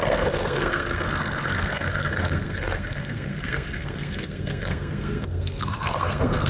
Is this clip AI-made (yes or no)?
yes